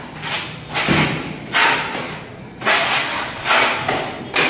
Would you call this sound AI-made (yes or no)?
no